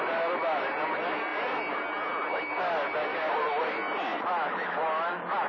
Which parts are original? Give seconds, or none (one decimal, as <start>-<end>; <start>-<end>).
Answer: 0.0-5.5